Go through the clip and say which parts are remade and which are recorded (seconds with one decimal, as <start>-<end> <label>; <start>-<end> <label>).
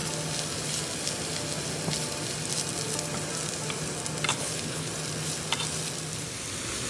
0.0-4.3 recorded; 4.3-4.9 remade; 4.9-6.9 recorded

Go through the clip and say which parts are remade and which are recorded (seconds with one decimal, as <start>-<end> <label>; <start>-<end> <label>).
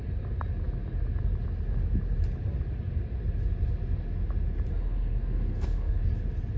0.0-4.7 recorded; 4.7-6.0 remade; 6.0-6.6 recorded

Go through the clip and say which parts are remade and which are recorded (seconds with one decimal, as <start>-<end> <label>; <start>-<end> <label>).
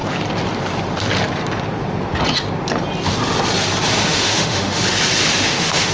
0.0-4.0 recorded; 4.0-4.8 remade; 4.8-5.3 recorded; 5.3-5.9 remade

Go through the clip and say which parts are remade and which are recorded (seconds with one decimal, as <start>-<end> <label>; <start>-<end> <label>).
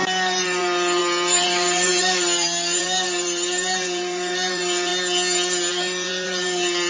0.0-4.9 remade; 4.9-5.7 recorded; 5.7-6.9 remade